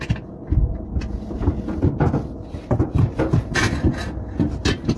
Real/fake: real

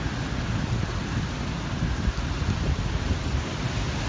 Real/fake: real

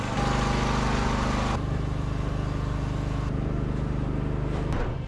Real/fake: real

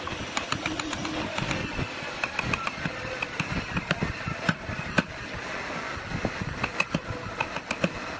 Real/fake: real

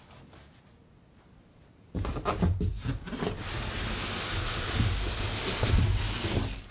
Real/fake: real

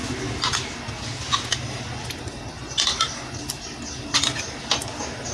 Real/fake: real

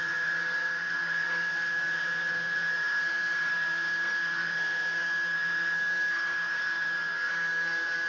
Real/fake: fake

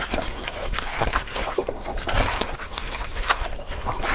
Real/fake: fake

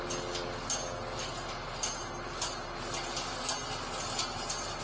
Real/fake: real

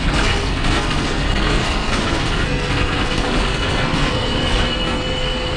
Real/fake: fake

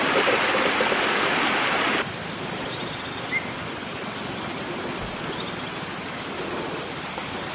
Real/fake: real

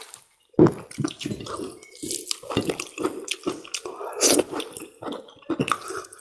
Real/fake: real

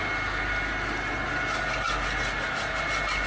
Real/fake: real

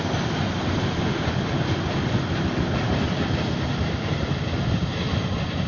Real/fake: real